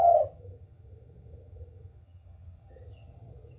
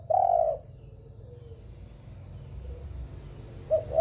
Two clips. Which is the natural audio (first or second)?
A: second